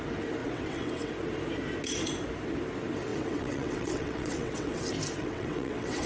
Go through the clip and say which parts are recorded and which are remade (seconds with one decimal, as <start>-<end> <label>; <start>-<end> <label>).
0.0-0.4 recorded; 0.4-1.1 remade; 1.1-3.1 recorded; 3.1-4.8 remade; 4.8-5.2 recorded; 5.2-6.1 remade